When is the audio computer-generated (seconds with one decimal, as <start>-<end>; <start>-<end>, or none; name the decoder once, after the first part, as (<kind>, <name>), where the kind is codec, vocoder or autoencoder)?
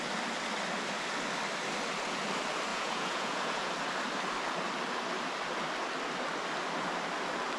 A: 2.7-3.7 (vocoder, Vocos)